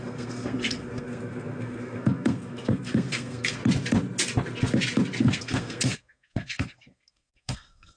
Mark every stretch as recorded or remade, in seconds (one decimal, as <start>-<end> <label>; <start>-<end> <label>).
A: 0.0-3.6 remade; 3.6-5.2 recorded; 5.2-8.0 remade